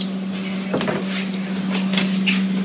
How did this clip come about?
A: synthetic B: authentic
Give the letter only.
B